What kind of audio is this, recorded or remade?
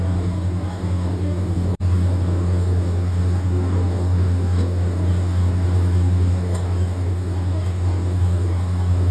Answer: remade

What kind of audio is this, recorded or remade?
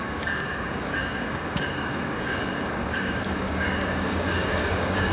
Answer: remade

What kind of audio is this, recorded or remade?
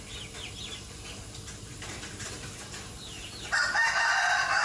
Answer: recorded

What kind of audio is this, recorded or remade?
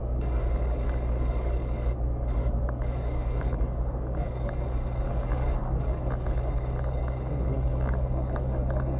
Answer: remade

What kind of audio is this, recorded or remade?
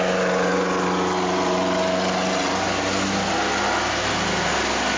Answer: recorded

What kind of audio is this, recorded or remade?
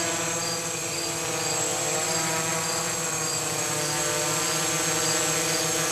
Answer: recorded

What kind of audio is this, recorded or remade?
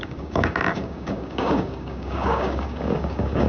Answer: remade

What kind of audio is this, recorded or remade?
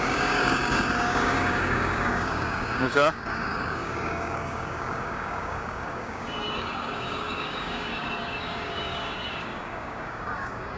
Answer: remade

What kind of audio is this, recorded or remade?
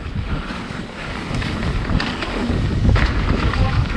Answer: remade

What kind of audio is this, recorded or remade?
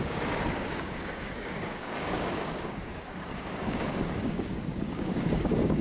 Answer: remade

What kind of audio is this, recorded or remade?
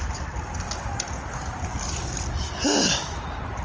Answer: recorded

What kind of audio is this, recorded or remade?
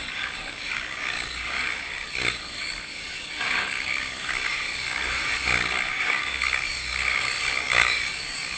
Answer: remade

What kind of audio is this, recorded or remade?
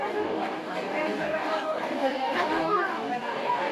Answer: remade